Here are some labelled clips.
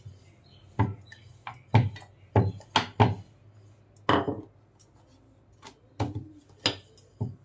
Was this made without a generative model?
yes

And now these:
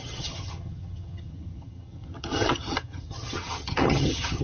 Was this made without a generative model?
no